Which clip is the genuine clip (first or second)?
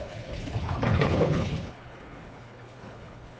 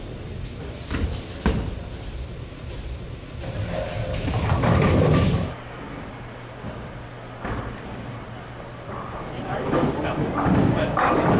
second